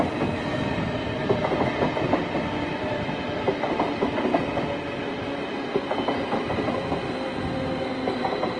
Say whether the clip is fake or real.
real